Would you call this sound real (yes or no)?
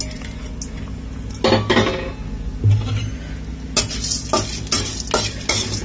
yes